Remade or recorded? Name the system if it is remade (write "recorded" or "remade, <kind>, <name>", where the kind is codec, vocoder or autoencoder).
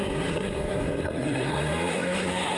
remade, codec, SNAC